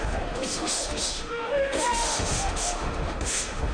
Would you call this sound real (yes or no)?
no